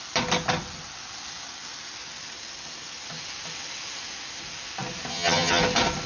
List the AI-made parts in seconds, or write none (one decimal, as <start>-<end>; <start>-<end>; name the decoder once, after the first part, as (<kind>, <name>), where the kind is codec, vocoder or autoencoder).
5.1-5.6 (vocoder, HiFi-GAN)